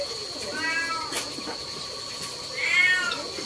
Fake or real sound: real